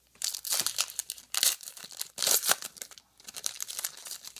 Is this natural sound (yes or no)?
yes